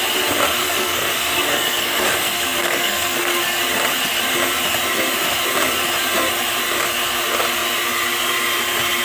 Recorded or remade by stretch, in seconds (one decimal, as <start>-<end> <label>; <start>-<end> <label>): 0.0-0.6 recorded; 0.6-3.4 remade; 3.4-9.0 recorded